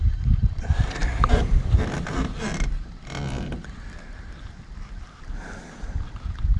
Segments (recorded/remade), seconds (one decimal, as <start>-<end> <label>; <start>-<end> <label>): 0.0-6.6 recorded